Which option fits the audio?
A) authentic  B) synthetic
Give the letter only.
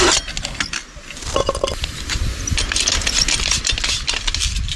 A